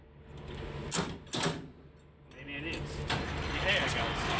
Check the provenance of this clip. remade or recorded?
recorded